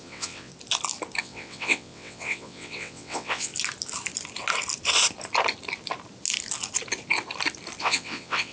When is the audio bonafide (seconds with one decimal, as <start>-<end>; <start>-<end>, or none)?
0.5-1.2; 3.5-7.8